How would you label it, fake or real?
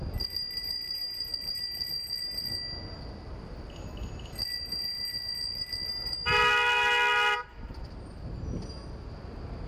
real